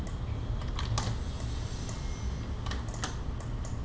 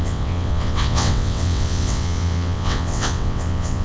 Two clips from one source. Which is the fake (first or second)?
second